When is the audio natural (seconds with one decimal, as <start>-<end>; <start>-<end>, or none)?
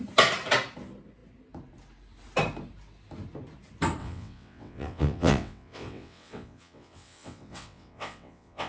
0.0-4.0